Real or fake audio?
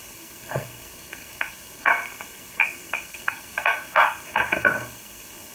fake